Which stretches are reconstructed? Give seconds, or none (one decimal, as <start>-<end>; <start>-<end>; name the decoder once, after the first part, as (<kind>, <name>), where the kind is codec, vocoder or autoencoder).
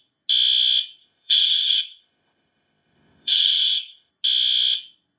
1.0-4.1 (codec, ZipCodec)